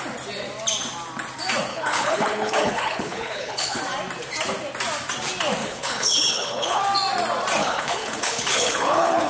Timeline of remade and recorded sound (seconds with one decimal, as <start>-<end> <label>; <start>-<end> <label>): 0.0-1.7 recorded; 1.7-3.8 remade; 3.8-5.6 recorded; 5.6-6.8 remade; 6.8-7.6 recorded; 7.6-9.3 remade